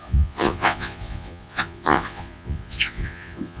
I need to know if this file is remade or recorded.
remade